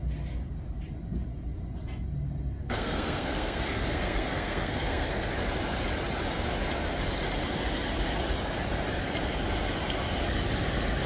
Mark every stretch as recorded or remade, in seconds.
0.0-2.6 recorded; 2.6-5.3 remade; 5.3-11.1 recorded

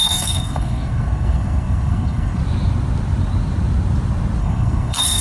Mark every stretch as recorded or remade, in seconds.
0.0-2.4 remade; 2.4-4.4 recorded; 4.4-5.2 remade

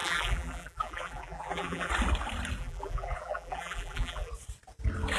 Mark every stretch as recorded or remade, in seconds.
0.0-1.9 remade; 1.9-2.6 recorded; 2.6-4.3 remade; 4.3-5.2 recorded

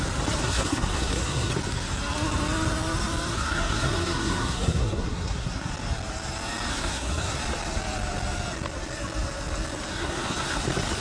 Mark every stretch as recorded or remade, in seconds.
0.0-0.4 recorded; 0.4-1.5 remade; 1.5-3.3 recorded; 3.3-5.7 remade; 5.7-6.7 recorded; 6.7-7.4 remade; 7.4-9.9 recorded; 9.9-10.6 remade; 10.6-11.0 recorded

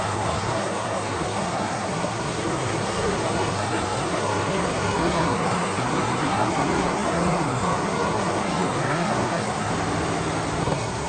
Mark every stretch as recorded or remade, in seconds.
0.0-9.7 remade; 9.7-10.6 recorded; 10.6-11.1 remade

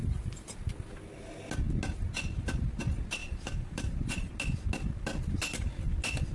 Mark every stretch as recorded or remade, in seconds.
0.0-0.5 remade; 0.5-3.2 recorded; 3.2-4.3 remade; 4.3-6.3 recorded